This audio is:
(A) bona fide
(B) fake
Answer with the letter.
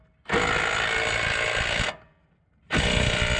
A